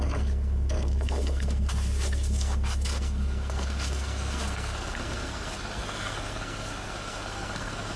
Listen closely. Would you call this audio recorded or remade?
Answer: remade